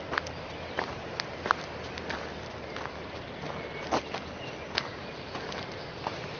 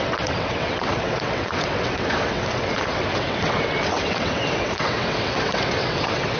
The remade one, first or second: second